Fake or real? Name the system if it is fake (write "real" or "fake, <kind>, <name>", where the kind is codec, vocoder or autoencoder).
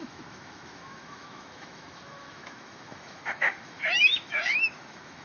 fake, autoencoder, DAC-VAE